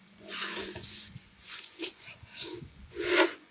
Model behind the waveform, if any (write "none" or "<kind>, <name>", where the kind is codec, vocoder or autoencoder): vocoder, Vocos